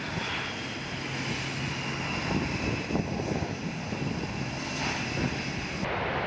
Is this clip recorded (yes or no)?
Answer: yes